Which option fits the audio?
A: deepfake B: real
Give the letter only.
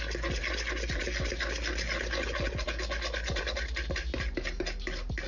B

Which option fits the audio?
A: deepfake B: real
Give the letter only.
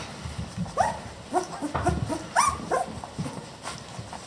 B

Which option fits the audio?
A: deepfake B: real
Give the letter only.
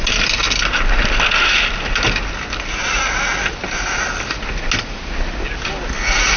B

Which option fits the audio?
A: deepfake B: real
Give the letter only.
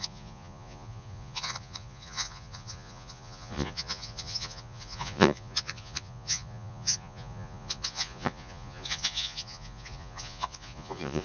A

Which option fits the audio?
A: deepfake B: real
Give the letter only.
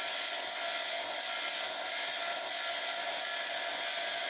B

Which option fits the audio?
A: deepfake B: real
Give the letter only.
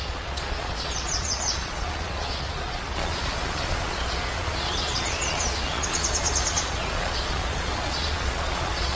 A